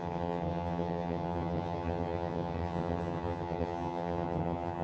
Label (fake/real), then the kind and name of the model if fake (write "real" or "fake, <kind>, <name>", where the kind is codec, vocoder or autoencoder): fake, vocoder, HiFi-GAN